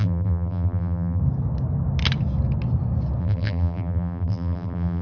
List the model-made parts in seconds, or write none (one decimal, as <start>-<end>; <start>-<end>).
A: 0.0-1.2; 3.2-5.0